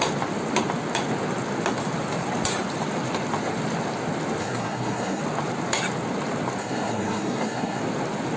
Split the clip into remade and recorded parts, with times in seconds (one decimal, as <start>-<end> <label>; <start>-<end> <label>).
0.0-4.4 recorded; 4.4-5.2 remade; 5.2-6.6 recorded; 6.6-7.8 remade; 7.8-8.4 recorded